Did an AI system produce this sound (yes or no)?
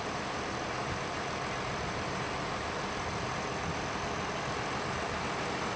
yes